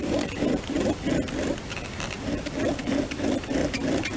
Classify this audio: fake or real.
fake